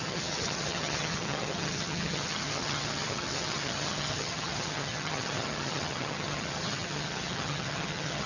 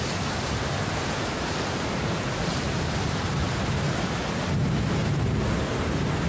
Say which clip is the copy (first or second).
first